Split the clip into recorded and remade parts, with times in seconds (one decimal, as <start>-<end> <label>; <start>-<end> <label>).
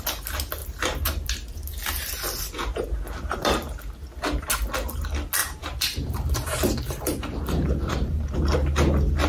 0.0-0.6 recorded; 0.6-1.3 remade; 1.3-5.4 recorded; 5.4-8.3 remade; 8.3-9.3 recorded